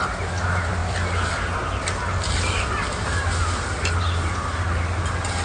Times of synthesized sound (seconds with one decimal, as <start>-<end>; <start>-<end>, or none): none

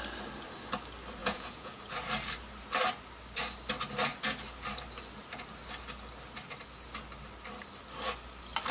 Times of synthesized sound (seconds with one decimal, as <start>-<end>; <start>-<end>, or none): 1.2-1.8